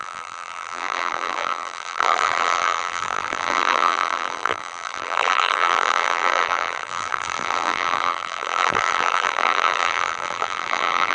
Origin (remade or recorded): remade